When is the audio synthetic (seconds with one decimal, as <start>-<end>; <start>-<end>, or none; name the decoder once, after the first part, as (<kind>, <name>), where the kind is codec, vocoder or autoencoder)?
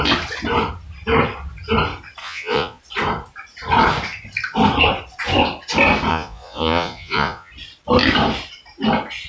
2.2-2.8 (vocoder, Vocos); 6.1-7.5